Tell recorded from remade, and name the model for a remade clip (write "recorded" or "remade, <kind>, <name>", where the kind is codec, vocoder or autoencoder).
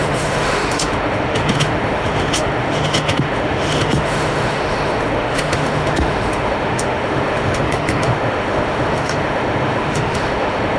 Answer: remade, autoencoder, DAC-VAE